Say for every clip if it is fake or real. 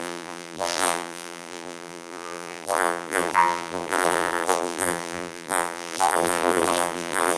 fake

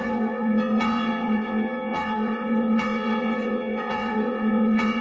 fake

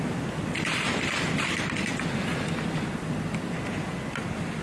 real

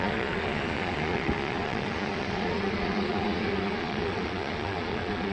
fake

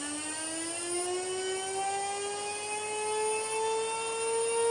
real